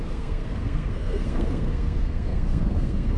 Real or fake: fake